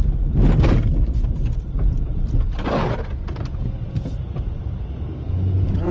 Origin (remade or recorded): recorded